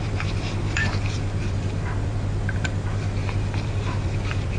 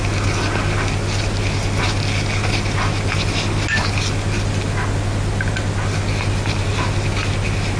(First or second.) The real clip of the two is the second